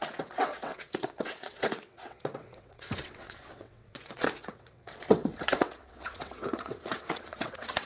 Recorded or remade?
remade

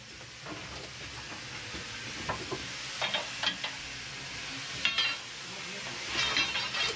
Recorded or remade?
recorded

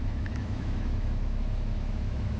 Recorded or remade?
remade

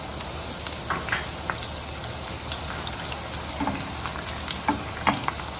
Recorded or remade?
recorded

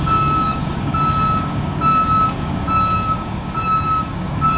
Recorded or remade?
remade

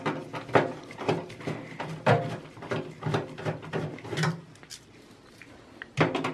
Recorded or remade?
recorded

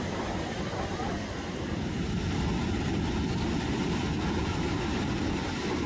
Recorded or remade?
recorded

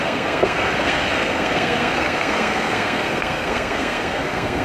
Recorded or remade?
remade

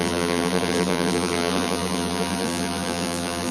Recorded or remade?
remade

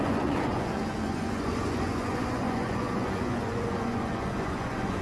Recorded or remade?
remade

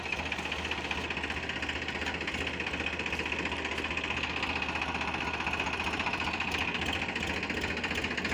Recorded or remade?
recorded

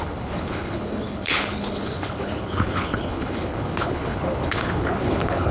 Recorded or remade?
remade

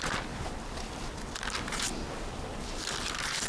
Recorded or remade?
remade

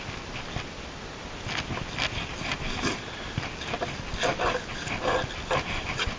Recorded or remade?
recorded